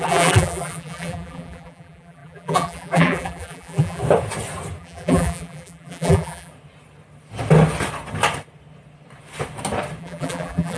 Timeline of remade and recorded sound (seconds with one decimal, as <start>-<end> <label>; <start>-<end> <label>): 0.0-4.0 remade; 4.0-4.8 recorded; 4.8-6.5 remade; 6.5-10.0 recorded; 10.0-10.8 remade